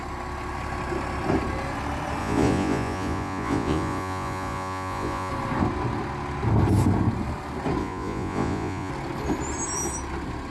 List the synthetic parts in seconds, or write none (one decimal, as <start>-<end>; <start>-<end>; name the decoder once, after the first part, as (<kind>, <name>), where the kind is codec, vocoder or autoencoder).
2.2-5.3 (vocoder, Vocos); 7.8-8.9